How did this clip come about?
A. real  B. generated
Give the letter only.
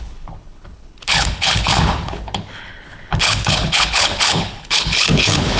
B